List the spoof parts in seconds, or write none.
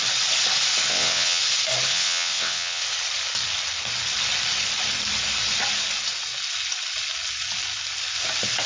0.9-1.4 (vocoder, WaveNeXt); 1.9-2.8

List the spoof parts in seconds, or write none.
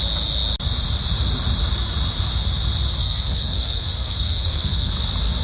3.0-4.9 (codec, SNAC)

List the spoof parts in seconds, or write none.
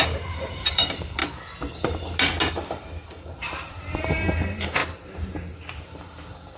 0.0-1.2 (vocoder, BigVGAN v2); 2.5-4.8; 5.8-6.6